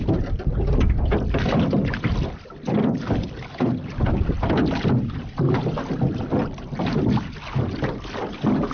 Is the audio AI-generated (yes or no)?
no